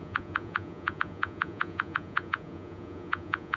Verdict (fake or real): fake